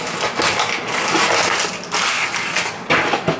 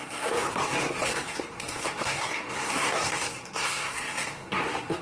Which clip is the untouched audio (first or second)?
first